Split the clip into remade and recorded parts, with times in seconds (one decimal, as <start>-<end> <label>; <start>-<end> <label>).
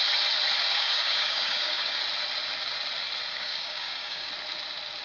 0.0-0.7 recorded; 0.7-2.0 remade; 2.0-3.3 recorded; 3.3-4.3 remade; 4.3-5.0 recorded